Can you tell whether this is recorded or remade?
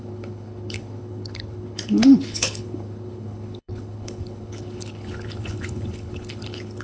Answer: remade